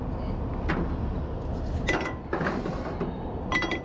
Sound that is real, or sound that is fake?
real